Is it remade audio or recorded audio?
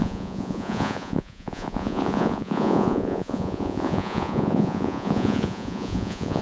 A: remade